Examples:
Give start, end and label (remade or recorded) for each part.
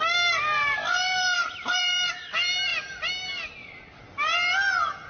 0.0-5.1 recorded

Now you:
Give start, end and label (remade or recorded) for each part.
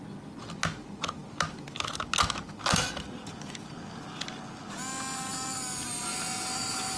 0.0-7.0 recorded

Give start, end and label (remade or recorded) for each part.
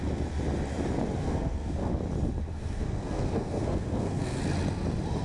0.0-1.2 recorded; 1.2-1.9 remade; 1.9-2.5 recorded; 2.5-4.4 remade; 4.4-5.2 recorded